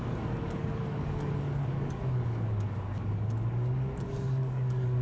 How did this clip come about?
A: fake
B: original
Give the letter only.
A